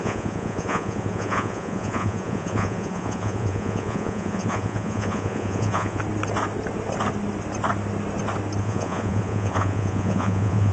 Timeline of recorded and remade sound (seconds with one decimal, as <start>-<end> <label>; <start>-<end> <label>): 0.0-6.0 remade; 6.0-8.6 recorded; 8.6-10.7 remade

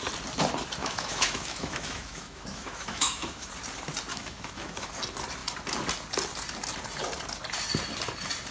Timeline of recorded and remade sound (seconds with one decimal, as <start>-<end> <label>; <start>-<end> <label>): 0.0-0.8 recorded; 0.8-3.5 remade; 3.5-4.1 recorded; 4.1-4.9 remade; 4.9-8.5 recorded

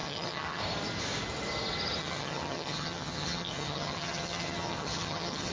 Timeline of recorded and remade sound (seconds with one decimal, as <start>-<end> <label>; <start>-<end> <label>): 0.0-0.6 remade; 0.6-2.0 recorded; 2.0-5.5 remade

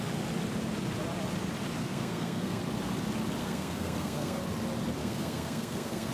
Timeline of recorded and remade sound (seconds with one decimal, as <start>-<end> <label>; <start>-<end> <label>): 0.0-1.8 recorded; 1.8-2.6 remade; 2.6-3.4 recorded; 3.4-4.4 remade; 4.4-5.0 recorded; 5.0-6.1 remade

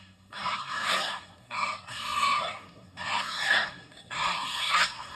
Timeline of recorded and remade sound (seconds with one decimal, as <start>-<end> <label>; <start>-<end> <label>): 0.0-5.1 remade